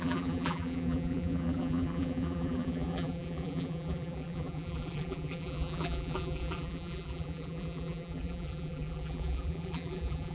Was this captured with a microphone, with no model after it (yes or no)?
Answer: no